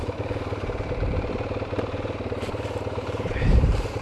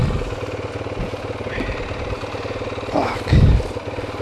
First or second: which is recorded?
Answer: second